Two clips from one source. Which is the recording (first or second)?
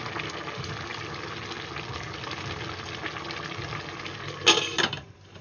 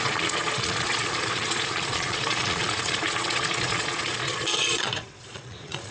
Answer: first